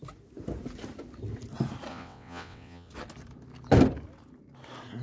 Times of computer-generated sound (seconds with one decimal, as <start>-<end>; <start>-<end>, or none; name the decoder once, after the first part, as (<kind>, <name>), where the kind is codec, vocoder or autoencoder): 1.9-2.9 (vocoder, WaveNeXt)